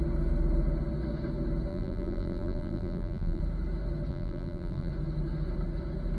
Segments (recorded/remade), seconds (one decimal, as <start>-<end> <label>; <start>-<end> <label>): 0.0-1.7 recorded; 1.7-3.4 remade; 3.4-4.1 recorded; 4.1-4.9 remade; 4.9-6.2 recorded